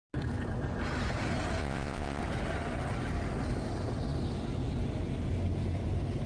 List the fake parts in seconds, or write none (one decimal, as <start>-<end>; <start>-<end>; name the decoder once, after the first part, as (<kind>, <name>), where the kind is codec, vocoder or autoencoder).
1.6-2.2 (vocoder, Vocos)